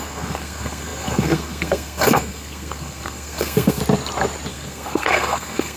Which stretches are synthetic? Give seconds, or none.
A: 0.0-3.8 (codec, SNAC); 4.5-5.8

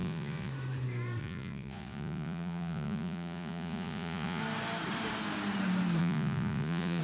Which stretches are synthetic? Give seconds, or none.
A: 0.0-0.5 (vocoder, Vocos); 1.2-4.4; 6.0-7.0

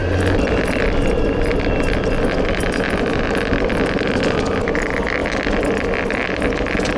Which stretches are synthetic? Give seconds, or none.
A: none

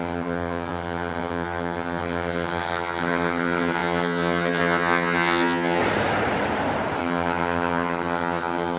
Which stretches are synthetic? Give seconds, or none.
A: 0.0-5.8 (vocoder, HiFi-GAN); 7.0-8.8

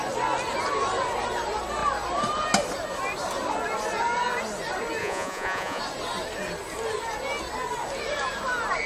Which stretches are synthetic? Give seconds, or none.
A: 5.0-5.8 (vocoder, Vocos)

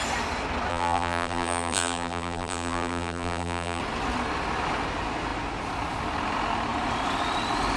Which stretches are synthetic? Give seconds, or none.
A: 0.7-3.8 (vocoder, BigVGAN v2)

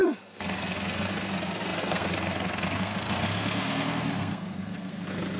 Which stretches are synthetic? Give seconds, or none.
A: 0.0-5.4 (codec, SNAC)

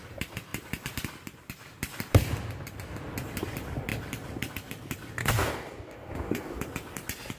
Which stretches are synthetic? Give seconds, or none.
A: 5.2-6.6 (codec, DAC)